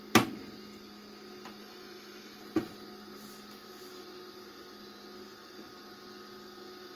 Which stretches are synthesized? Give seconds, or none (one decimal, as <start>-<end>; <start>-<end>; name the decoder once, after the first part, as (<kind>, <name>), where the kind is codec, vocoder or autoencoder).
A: 1.6-2.4 (autoencoder, DAC-VAE)